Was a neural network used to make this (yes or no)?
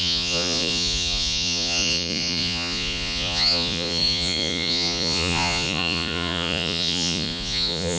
yes